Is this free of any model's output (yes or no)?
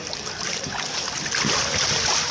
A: yes